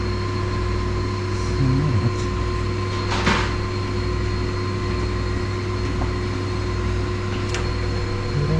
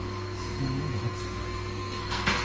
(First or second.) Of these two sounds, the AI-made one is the second